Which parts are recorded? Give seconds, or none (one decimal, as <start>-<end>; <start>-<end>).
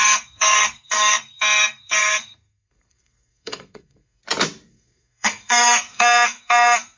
4.2-4.7